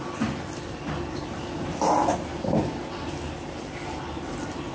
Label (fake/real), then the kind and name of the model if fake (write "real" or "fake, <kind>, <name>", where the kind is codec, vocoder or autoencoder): real